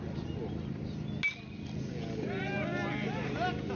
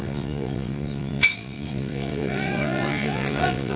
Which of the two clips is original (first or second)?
first